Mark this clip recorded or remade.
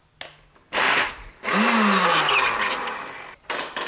recorded